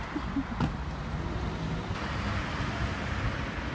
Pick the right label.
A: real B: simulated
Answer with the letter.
A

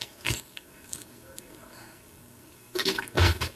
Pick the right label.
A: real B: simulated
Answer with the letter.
B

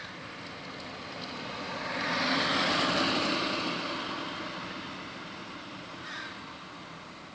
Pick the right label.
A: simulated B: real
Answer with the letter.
B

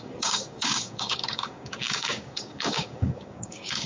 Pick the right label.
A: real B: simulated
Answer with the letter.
B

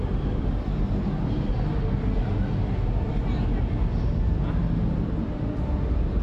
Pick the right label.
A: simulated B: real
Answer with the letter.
B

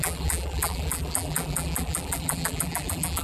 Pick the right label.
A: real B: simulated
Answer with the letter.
B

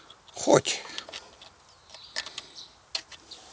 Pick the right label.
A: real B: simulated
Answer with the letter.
A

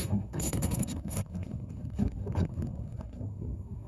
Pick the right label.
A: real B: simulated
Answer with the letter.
B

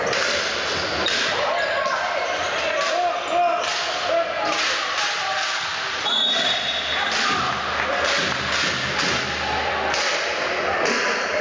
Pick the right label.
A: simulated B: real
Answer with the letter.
B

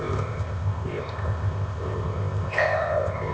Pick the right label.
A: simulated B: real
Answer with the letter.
A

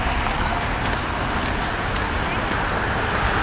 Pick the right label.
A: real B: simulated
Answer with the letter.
A